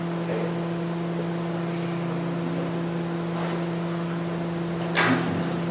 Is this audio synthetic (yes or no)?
no